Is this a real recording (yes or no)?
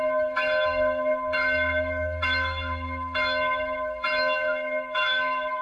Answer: no